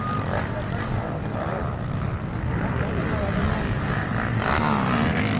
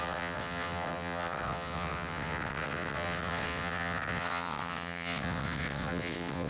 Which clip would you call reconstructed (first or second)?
second